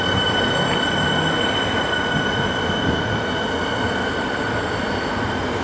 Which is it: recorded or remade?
recorded